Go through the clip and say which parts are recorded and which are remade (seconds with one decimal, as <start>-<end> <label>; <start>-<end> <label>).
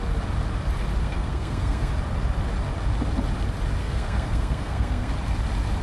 0.0-1.0 recorded; 1.0-1.9 remade; 1.9-3.8 recorded; 3.8-5.1 remade; 5.1-5.8 recorded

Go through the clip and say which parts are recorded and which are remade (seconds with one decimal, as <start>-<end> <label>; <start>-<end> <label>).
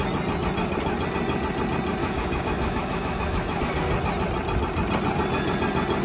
0.0-2.0 recorded; 2.0-3.6 remade; 3.6-6.0 recorded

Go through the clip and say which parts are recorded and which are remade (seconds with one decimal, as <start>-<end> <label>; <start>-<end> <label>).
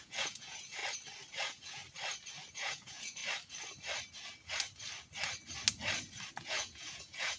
0.0-0.8 remade; 0.8-1.3 recorded; 1.3-1.8 remade; 1.8-2.5 recorded; 2.5-3.2 remade; 3.2-6.3 recorded; 6.3-7.4 remade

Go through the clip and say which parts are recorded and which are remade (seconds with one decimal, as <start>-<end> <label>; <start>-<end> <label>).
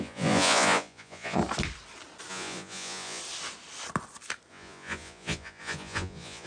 0.0-1.4 remade; 1.4-2.3 recorded; 2.3-3.2 remade; 3.2-4.5 recorded; 4.5-6.5 remade